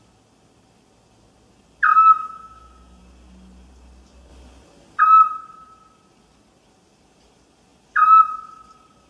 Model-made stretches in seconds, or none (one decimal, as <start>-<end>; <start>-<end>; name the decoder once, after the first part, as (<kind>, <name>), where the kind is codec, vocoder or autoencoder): 1.9-3.0 (autoencoder, DAC-VAE)